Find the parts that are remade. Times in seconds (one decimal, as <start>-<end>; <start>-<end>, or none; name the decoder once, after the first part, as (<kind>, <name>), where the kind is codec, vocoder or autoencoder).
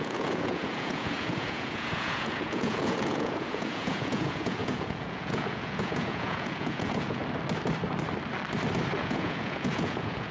0.0-7.2 (vocoder, Vocos); 9.0-10.3